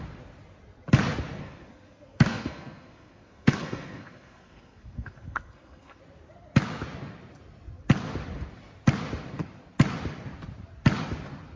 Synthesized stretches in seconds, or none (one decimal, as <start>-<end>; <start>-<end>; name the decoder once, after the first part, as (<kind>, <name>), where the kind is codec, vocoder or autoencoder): 1.4-6.0 (codec, SNAC)